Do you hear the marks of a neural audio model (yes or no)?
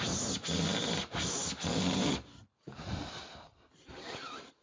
no